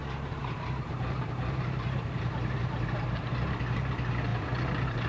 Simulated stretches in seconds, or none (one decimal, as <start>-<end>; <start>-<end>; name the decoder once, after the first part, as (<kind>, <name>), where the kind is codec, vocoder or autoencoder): 0.4-3.3 (vocoder, BigVGAN v2); 4.3-5.1